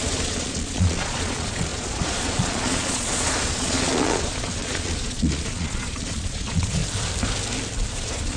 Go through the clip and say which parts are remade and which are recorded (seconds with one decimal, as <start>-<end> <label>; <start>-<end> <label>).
0.0-6.8 remade; 6.8-7.9 recorded; 7.9-8.4 remade